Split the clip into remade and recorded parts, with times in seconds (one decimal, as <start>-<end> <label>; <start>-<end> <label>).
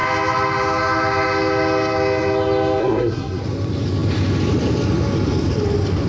0.0-2.8 recorded; 2.8-3.4 remade; 3.4-6.1 recorded